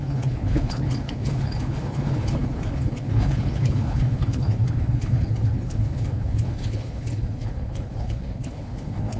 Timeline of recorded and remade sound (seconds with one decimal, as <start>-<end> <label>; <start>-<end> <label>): 0.0-9.2 remade